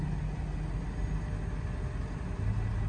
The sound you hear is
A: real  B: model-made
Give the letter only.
A